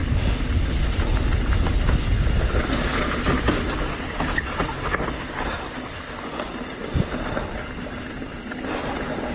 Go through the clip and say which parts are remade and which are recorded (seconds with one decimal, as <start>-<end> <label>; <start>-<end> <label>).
0.0-9.3 recorded